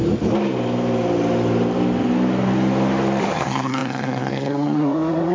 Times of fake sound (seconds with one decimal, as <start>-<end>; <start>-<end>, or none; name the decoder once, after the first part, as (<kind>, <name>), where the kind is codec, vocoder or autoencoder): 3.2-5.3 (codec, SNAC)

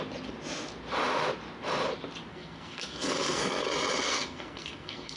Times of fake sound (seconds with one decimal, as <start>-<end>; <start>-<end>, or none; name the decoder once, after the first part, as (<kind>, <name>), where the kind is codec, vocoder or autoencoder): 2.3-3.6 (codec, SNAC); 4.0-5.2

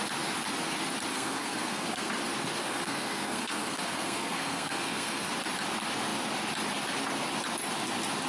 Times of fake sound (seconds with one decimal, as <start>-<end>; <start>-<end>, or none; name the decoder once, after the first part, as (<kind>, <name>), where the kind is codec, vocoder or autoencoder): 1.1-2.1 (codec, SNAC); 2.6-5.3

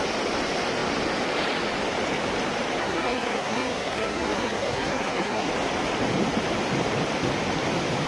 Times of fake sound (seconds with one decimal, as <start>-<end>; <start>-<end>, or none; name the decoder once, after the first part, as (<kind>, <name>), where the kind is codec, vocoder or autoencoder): 2.8-5.5 (codec, SNAC)

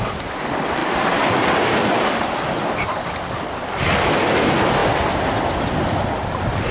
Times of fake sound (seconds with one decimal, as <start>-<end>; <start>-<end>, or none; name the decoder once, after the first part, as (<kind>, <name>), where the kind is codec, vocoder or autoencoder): none

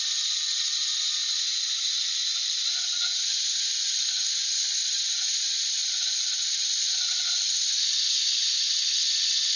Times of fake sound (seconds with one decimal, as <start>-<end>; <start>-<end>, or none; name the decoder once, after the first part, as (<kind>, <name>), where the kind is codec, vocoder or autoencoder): none